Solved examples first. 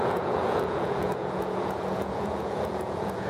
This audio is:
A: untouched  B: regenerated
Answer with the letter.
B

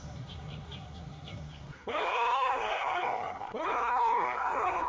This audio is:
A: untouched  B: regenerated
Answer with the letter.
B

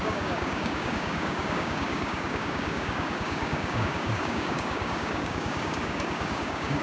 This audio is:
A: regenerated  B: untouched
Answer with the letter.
A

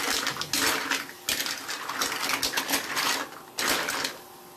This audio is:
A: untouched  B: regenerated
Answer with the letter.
A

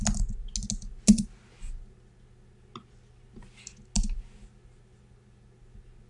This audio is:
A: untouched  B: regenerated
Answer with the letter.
A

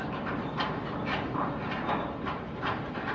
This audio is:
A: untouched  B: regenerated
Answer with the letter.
A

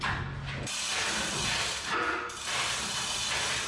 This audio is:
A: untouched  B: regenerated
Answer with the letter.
A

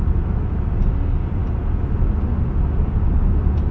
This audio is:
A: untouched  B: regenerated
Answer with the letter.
A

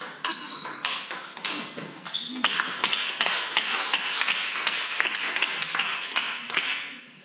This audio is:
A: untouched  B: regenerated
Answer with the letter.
B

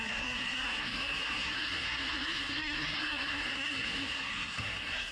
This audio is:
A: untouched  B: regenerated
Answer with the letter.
B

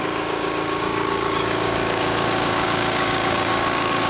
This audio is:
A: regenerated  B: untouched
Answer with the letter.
A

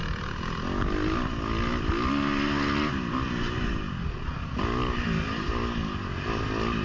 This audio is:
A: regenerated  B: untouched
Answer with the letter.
B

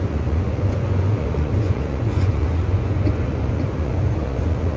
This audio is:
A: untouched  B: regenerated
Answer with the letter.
B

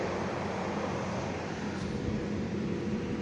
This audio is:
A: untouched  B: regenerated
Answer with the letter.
A